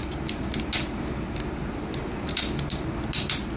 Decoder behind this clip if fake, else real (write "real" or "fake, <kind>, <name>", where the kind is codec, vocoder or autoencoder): real